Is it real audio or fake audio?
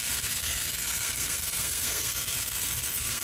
fake